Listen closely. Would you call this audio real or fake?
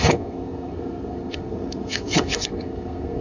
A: fake